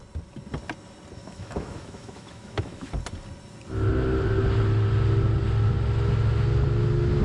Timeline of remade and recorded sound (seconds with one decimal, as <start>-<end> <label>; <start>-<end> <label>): 0.0-1.2 recorded; 1.2-2.9 remade; 2.9-7.2 recorded